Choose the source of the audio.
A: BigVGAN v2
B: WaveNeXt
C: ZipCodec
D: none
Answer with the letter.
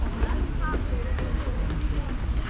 D